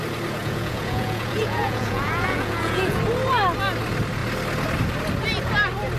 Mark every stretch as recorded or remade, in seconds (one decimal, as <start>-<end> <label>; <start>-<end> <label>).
0.0-0.4 recorded; 0.4-3.0 remade; 3.0-6.0 recorded